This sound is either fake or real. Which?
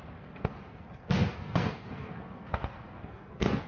fake